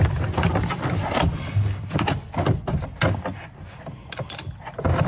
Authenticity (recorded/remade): recorded